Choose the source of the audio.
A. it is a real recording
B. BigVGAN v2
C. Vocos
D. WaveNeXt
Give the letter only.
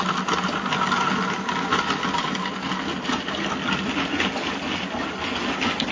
A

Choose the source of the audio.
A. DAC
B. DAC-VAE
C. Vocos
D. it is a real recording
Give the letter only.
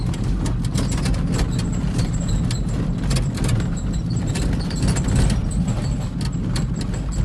D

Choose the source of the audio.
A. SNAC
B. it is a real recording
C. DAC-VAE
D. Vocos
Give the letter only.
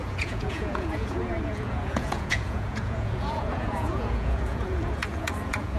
D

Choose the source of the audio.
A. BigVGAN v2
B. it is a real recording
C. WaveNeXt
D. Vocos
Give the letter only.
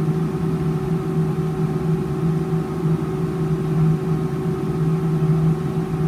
B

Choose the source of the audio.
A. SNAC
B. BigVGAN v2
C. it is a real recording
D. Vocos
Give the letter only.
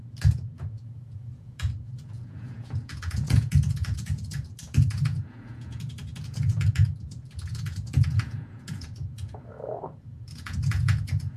D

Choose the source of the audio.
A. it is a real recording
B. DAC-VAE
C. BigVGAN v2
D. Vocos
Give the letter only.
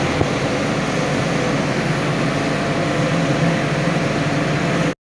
A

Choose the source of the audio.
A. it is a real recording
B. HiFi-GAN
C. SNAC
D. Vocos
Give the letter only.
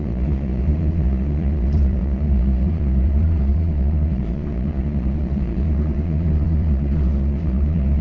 D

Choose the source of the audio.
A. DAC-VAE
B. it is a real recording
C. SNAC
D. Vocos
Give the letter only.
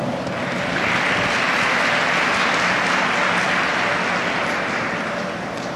B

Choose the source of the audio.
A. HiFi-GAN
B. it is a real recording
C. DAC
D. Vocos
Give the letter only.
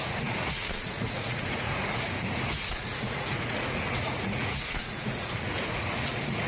D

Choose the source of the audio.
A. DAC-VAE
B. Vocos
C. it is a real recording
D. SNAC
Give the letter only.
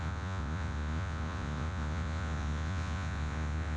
B